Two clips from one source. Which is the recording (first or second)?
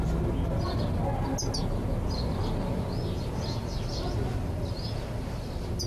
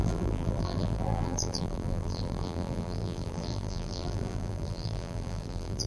first